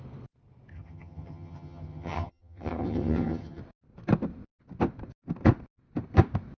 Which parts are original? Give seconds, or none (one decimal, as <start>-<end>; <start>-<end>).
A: 0.0-0.7; 3.6-6.6